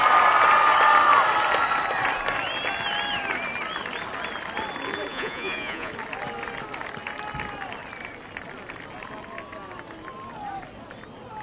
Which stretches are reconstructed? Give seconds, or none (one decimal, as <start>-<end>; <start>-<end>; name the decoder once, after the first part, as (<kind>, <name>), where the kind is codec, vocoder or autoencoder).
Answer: 5.1-5.9 (vocoder, Vocos)